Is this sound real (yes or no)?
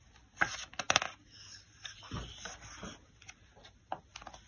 yes